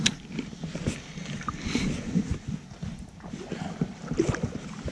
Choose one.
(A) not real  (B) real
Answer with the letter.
B